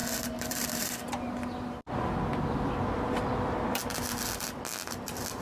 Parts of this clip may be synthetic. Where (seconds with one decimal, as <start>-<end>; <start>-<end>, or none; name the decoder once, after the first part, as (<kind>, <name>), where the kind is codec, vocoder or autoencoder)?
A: 0.0-1.1 (vocoder, BigVGAN v2)

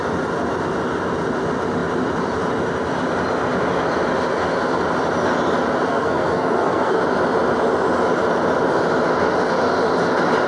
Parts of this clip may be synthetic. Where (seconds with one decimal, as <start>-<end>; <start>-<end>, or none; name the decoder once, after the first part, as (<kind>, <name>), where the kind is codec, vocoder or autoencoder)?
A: 5.9-7.0 (codec, SNAC)